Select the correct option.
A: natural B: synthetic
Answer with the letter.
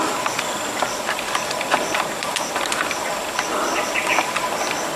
A